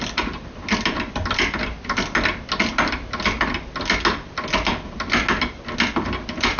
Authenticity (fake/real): real